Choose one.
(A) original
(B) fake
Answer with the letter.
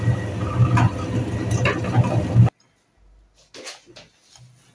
A